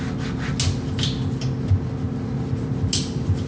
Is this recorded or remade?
recorded